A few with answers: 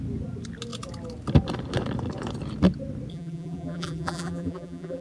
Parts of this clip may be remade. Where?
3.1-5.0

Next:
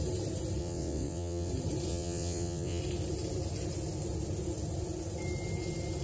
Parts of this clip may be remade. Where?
0.6-1.5; 1.9-2.8

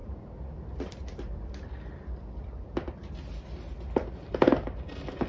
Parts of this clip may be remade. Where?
none

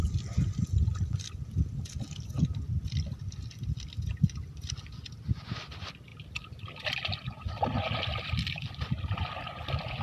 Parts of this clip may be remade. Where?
none

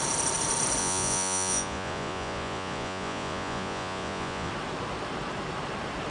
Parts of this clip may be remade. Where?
0.8-4.5

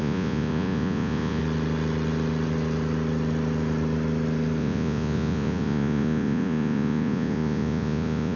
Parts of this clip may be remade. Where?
0.0-1.4; 4.6-8.4